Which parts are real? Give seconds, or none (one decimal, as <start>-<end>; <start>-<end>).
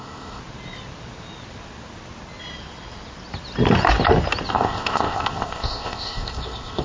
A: 0.4-4.5